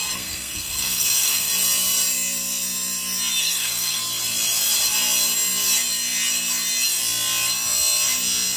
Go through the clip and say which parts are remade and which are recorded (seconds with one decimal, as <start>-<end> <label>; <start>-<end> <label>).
0.0-1.5 remade; 1.5-3.4 recorded; 3.4-4.0 remade; 4.0-8.6 recorded

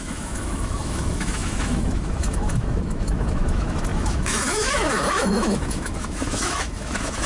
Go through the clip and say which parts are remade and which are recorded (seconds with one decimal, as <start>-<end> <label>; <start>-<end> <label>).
0.0-7.3 remade

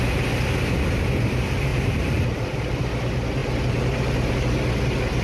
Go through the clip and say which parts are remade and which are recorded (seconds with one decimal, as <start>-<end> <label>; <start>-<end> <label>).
0.0-5.2 recorded